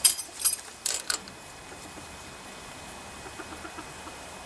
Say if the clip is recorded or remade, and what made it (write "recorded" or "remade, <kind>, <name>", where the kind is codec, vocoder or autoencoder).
remade, vocoder, BigVGAN v2